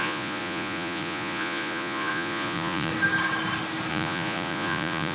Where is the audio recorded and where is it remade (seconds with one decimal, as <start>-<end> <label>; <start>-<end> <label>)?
0.0-2.9 remade; 2.9-3.9 recorded; 3.9-5.1 remade